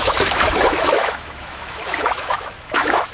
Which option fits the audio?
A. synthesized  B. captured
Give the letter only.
A